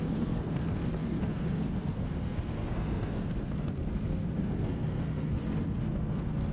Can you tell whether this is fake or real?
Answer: fake